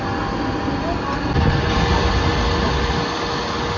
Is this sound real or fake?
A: real